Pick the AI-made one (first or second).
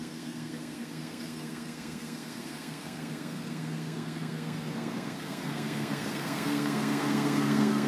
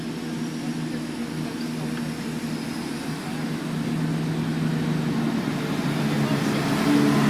first